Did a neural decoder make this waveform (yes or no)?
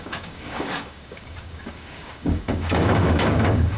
yes